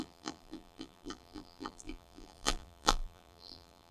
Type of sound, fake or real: fake